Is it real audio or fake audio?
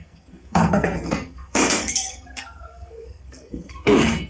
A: fake